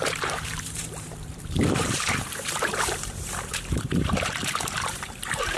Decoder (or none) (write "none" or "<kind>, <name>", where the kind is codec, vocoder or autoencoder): vocoder, BigVGAN v2